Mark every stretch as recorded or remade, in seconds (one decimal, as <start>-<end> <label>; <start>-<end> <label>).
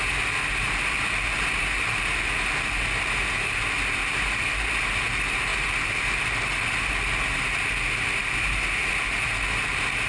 0.0-10.1 recorded